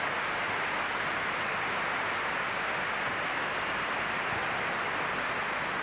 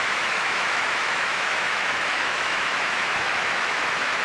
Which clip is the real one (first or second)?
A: first